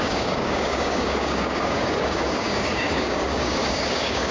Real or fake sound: fake